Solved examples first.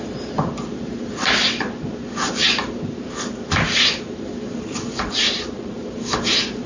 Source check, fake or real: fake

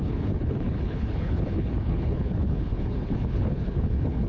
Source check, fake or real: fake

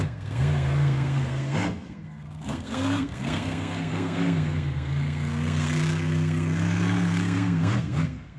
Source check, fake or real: fake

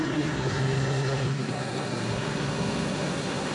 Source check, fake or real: fake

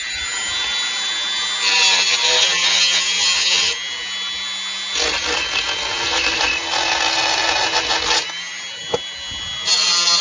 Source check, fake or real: real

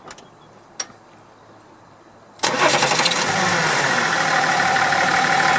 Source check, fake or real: real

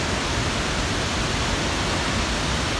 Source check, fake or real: real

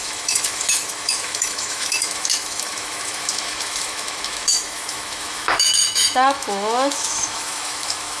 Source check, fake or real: fake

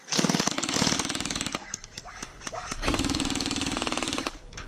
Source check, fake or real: fake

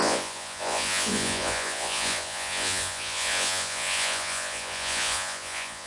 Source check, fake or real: fake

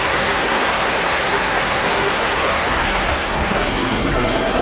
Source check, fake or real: fake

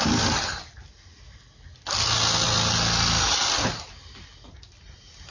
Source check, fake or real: real